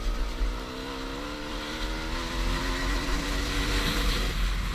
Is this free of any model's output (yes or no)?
yes